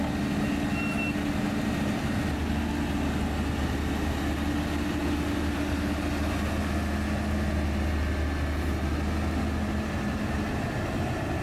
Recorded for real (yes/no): yes